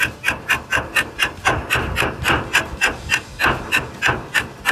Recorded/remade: remade